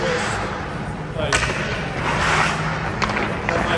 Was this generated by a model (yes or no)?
no